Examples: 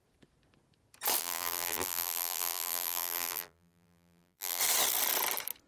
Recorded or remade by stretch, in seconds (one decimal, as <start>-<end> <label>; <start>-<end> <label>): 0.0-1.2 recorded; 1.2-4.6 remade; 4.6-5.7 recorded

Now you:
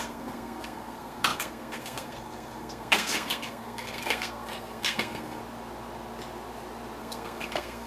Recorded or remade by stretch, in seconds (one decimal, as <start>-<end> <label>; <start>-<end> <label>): 0.0-5.4 remade; 5.4-7.0 recorded; 7.0-7.9 remade

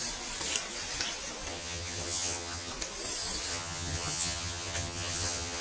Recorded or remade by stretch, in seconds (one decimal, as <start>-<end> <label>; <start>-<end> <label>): 0.0-1.5 recorded; 1.5-2.7 remade; 2.7-3.5 recorded; 3.5-5.6 remade